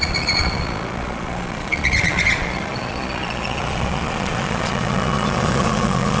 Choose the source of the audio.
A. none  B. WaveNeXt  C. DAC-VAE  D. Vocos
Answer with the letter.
D